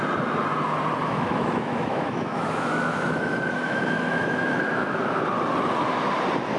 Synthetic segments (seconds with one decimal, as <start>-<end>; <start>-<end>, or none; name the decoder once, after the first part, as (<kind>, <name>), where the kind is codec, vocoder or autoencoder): 1.0-5.0 (autoencoder, DAC-VAE)

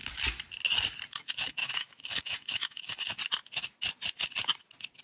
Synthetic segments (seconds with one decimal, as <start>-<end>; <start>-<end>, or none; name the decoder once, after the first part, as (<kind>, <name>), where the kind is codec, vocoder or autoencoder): 1.1-3.2 (autoencoder, DAC-VAE)

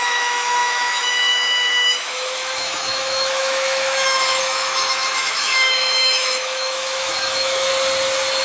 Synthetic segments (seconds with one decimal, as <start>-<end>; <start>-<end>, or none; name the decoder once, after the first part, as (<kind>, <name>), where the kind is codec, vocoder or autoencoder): 0.0-7.7 (autoencoder, DAC-VAE)

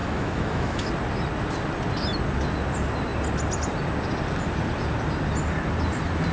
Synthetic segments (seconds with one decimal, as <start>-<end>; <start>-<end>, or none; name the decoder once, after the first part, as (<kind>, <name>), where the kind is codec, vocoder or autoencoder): 0.0-0.9 (autoencoder, DAC-VAE)

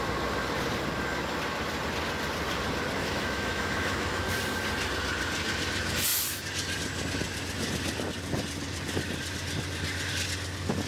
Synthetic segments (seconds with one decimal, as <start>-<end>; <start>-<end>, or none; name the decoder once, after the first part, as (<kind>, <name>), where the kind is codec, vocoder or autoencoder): 3.0-4.3 (autoencoder, DAC-VAE)